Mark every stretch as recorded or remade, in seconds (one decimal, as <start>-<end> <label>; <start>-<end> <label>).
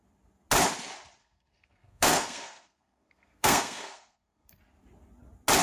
0.0-1.2 recorded; 1.2-4.6 remade; 4.6-5.6 recorded